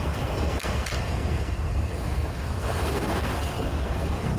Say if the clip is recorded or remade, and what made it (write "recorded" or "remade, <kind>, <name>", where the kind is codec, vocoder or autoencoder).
remade, codec, SNAC